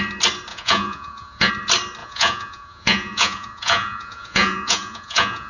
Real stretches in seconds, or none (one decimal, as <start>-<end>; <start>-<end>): 0.0-0.5; 1.5-2.0